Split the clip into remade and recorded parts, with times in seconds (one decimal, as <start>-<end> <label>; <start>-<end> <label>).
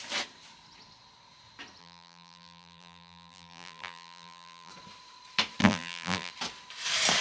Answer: 0.0-1.8 recorded; 1.8-4.7 remade; 4.7-5.6 recorded; 5.6-6.3 remade; 6.3-7.2 recorded